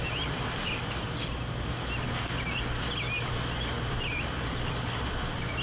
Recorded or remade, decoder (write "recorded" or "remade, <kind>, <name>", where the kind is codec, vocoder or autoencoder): remade, vocoder, BigVGAN v2